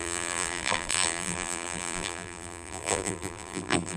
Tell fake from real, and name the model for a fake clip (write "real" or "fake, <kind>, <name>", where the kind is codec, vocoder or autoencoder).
fake, vocoder, BigVGAN v2